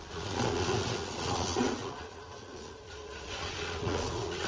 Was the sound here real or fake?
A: fake